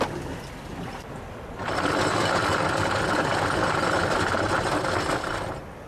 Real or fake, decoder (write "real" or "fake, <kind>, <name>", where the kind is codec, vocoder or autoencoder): real